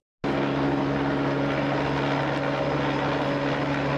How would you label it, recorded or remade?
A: recorded